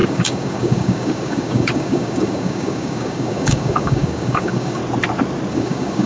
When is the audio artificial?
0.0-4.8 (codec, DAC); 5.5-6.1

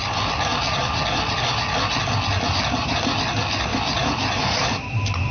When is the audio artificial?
none

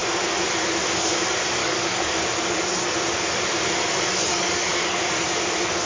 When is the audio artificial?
1.6-2.2 (codec, DAC); 4.3-5.0

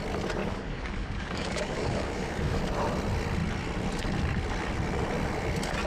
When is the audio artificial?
0.4-2.6 (codec, DAC)

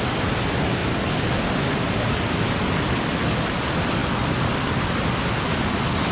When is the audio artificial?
none

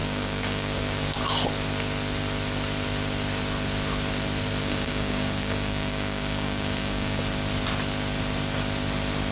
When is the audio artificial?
0.0-1.2 (codec, DAC); 4.6-7.2

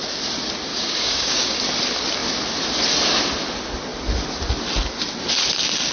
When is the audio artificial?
0.7-1.6 (codec, DAC)